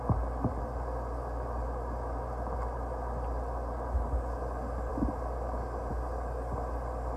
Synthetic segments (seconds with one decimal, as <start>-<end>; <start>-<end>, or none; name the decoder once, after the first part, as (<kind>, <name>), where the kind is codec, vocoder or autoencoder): none